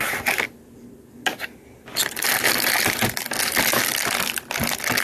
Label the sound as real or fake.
real